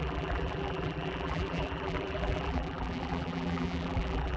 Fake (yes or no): yes